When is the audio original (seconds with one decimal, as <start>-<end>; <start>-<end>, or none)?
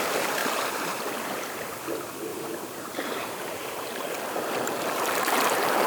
0.0-0.4; 1.0-2.3